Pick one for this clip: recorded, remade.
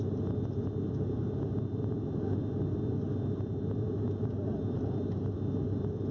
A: recorded